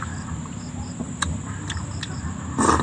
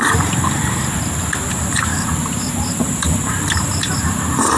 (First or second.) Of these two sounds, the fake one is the second